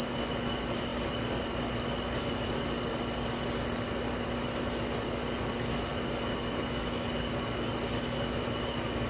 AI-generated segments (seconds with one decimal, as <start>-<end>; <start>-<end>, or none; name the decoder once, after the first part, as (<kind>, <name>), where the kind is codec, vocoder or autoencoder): 0.9-5.7 (vocoder, BigVGAN v2)